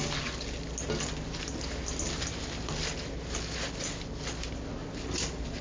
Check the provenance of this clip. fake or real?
real